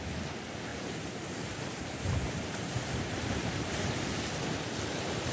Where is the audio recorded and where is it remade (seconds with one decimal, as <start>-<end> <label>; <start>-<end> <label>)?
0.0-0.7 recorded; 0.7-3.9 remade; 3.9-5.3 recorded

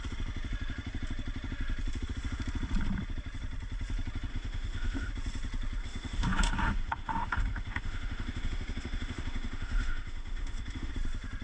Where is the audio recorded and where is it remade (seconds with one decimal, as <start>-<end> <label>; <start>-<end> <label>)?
0.0-4.3 recorded; 4.3-5.1 remade; 5.1-5.8 recorded; 5.8-10.9 remade; 10.9-11.4 recorded

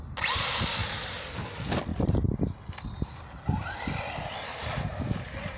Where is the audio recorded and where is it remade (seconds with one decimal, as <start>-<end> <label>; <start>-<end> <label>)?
0.0-0.8 recorded; 0.8-1.4 remade; 1.4-5.6 recorded